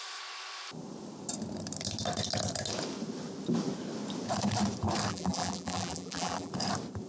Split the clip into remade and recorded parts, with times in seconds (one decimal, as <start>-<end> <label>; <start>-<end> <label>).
0.0-5.1 recorded; 5.1-6.5 remade; 6.5-7.1 recorded